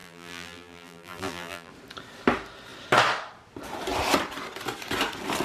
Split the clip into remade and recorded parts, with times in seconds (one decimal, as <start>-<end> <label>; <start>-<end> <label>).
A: 0.0-1.7 remade; 1.7-5.4 recorded